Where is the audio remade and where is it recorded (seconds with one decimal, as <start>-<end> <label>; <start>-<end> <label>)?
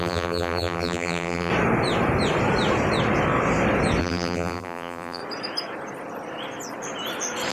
0.0-1.5 remade; 1.5-4.0 recorded; 4.0-5.2 remade; 5.2-7.5 recorded